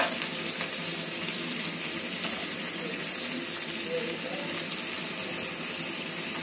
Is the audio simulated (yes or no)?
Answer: no